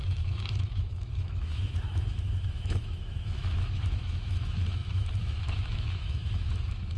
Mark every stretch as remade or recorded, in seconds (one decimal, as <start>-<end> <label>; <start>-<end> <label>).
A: 0.0-7.0 remade